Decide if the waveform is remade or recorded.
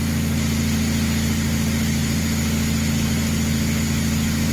recorded